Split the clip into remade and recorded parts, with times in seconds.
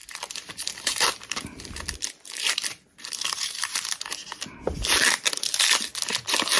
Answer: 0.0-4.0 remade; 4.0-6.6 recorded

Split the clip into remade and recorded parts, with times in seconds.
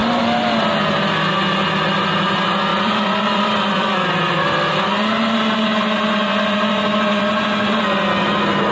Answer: 0.0-2.7 recorded; 2.7-5.5 remade; 5.5-8.7 recorded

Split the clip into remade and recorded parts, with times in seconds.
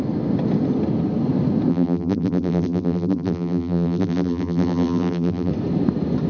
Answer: 0.0-1.7 recorded; 1.7-5.5 remade; 5.5-6.3 recorded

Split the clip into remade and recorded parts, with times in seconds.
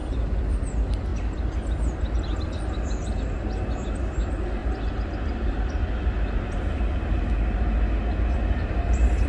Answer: 0.0-0.6 remade; 0.6-4.6 recorded; 4.6-5.7 remade; 5.7-9.3 recorded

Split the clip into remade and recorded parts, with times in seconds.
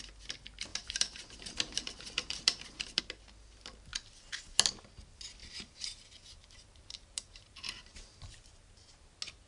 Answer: 0.0-0.7 recorded; 0.7-3.0 remade; 3.0-5.4 recorded; 5.4-8.7 remade; 8.7-9.5 recorded